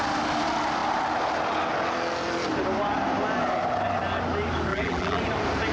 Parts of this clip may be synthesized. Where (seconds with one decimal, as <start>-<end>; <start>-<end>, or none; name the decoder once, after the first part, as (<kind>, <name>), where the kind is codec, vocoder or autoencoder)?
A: 4.7-5.2 (vocoder, BigVGAN v2)